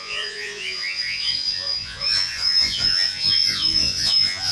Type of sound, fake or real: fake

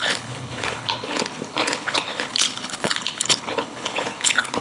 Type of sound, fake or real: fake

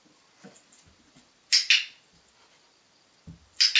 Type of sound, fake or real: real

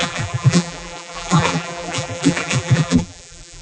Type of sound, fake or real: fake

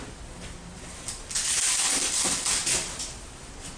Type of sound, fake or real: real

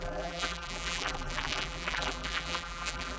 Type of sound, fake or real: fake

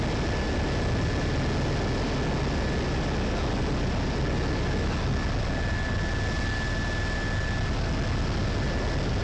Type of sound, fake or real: real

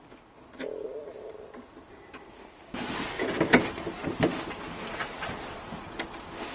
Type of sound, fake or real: real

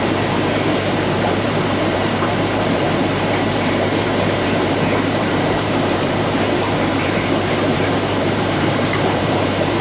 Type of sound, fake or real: fake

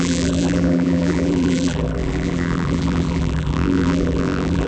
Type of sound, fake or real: fake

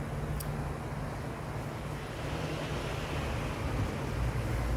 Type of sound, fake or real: real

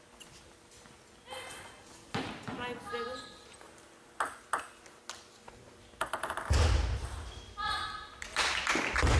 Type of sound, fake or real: real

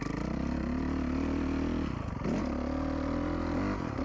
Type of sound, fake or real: real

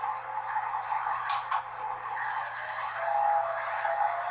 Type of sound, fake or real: real